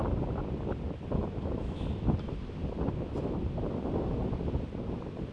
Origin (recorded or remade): recorded